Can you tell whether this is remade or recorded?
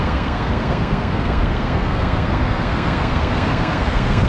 remade